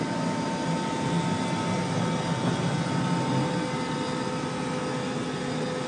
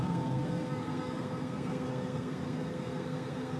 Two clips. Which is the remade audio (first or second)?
second